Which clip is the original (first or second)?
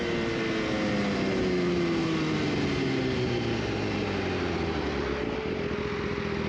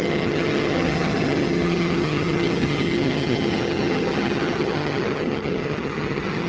first